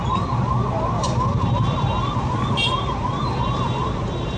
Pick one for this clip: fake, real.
real